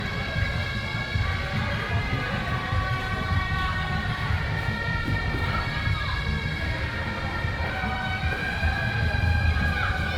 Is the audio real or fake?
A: fake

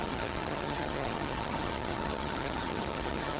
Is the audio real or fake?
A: fake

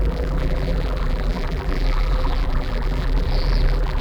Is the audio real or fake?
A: fake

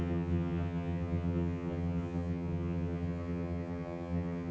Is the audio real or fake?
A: fake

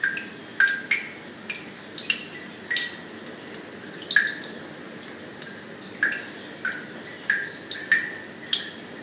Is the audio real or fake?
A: real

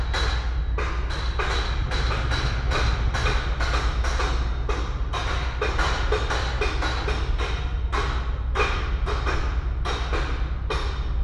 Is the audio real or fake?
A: real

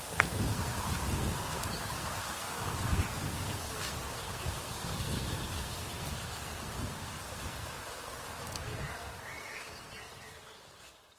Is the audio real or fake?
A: fake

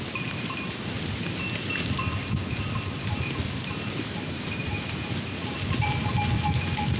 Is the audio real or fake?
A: real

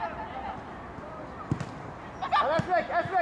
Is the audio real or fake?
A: real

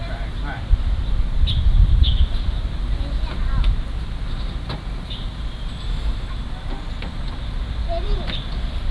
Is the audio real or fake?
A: fake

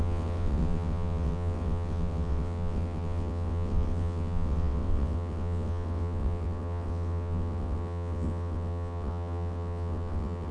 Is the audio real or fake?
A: fake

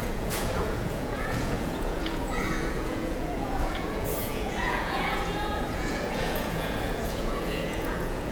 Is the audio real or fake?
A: fake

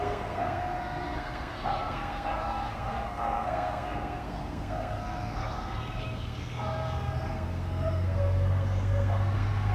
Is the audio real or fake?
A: fake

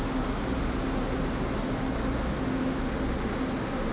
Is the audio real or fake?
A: real